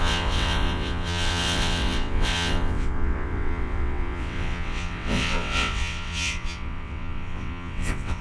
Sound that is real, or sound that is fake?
fake